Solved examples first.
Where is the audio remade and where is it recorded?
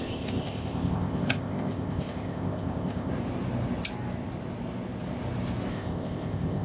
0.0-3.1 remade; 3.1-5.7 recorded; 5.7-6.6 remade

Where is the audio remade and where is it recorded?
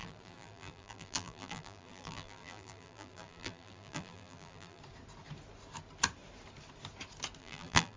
0.0-4.8 remade; 4.8-7.4 recorded; 7.4-8.0 remade